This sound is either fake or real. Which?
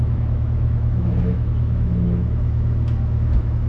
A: fake